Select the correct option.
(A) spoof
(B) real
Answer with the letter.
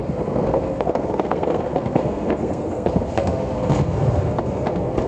A